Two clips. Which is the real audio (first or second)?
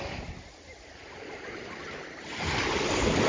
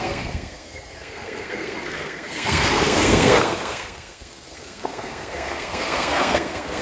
first